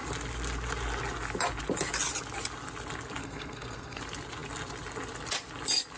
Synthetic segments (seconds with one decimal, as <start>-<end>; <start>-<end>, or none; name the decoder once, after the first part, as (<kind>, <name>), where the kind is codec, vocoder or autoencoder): 3.2-4.0 (codec, SNAC)